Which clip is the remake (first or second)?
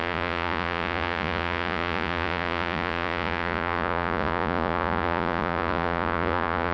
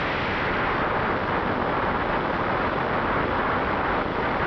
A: first